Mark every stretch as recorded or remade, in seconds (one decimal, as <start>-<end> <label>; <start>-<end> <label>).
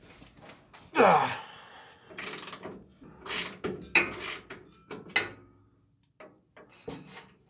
0.0-7.5 recorded